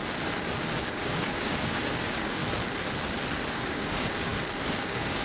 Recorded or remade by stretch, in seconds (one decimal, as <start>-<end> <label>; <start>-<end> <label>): 0.0-0.9 recorded; 0.9-2.4 remade; 2.4-3.5 recorded; 3.5-4.3 remade; 4.3-4.8 recorded; 4.8-5.2 remade